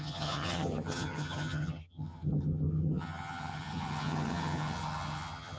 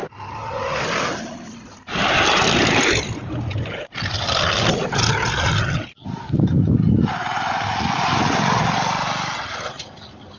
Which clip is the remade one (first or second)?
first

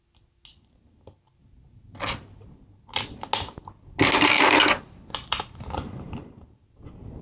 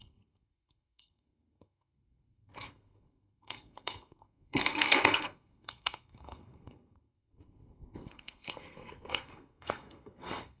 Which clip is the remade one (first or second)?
second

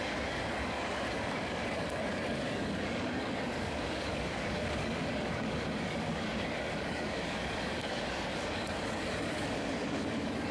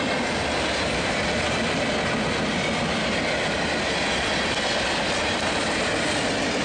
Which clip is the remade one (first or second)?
first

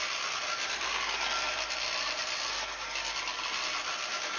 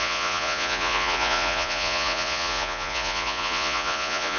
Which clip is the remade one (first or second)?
second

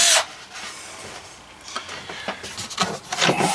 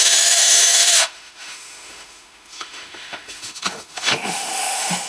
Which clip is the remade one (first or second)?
second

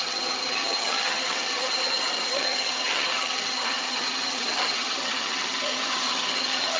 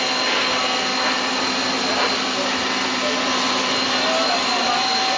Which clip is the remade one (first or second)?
first